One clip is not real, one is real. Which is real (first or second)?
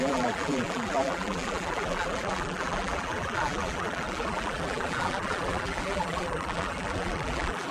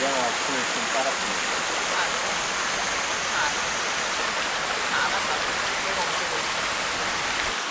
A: second